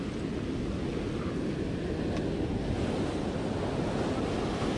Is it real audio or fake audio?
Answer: real